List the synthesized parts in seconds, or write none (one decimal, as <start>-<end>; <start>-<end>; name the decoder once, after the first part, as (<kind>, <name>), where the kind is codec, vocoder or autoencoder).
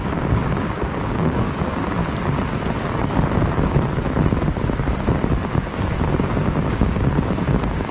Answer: 0.0-2.0 (codec, DAC); 6.7-7.9